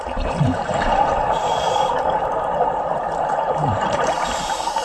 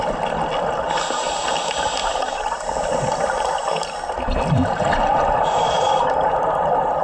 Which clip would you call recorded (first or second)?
second